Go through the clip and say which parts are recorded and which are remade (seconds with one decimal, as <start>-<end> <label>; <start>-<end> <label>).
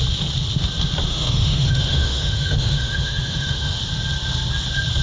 0.0-1.1 recorded; 1.1-3.8 remade; 3.8-5.0 recorded